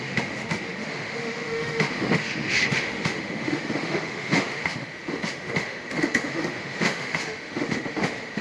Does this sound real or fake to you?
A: fake